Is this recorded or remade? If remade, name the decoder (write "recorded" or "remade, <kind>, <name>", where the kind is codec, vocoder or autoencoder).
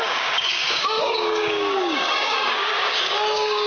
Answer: remade, codec, DAC